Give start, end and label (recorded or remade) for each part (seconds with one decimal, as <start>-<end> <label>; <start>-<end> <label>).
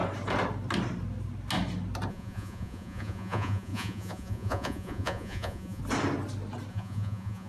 0.0-2.1 recorded; 2.1-5.8 remade; 5.8-6.7 recorded; 6.7-7.5 remade